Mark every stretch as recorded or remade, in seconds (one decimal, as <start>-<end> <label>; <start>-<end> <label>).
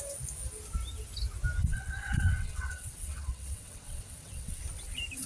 0.0-1.7 recorded; 1.7-4.6 remade; 4.6-5.3 recorded